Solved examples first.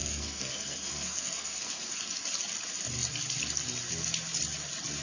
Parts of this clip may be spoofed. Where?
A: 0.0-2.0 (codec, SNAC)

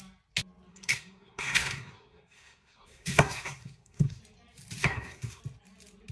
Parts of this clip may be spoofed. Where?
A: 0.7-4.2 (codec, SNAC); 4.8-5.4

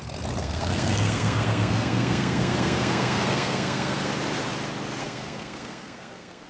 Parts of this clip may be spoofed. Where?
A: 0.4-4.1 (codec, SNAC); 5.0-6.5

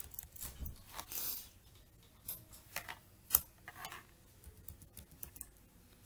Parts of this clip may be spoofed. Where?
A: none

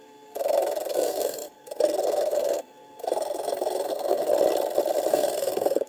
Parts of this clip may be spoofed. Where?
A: 0.0-4.3 (codec, SNAC); 5.1-5.9

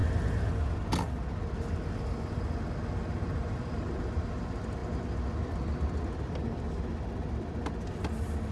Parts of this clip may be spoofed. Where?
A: none

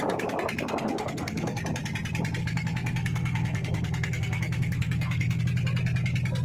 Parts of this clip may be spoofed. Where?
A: 0.8-1.6 (codec, SNAC); 2.4-5.4